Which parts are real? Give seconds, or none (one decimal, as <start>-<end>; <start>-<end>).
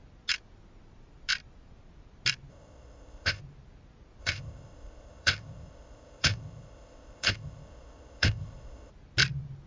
0.0-2.5; 3.4-4.2; 8.9-9.7